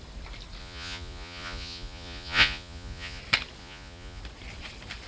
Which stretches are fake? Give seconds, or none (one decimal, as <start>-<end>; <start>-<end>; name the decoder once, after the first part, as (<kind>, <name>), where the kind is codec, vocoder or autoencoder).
0.6-3.2 (vocoder, Vocos); 3.6-4.2